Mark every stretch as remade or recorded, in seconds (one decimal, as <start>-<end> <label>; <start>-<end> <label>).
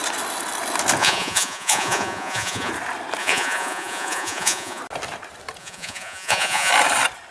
0.0-1.0 recorded; 1.0-2.7 remade; 2.7-3.2 recorded; 3.2-4.8 remade; 4.8-5.6 recorded; 5.6-6.7 remade; 6.7-7.3 recorded